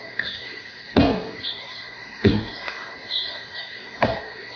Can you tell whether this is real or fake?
fake